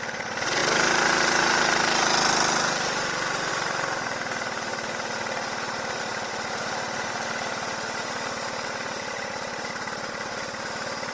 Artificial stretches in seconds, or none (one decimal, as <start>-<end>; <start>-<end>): none